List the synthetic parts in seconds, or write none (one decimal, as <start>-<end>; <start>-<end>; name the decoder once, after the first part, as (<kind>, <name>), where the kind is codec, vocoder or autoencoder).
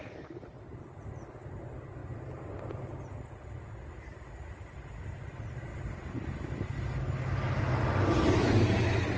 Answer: 2.0-2.9 (vocoder, BigVGAN v2)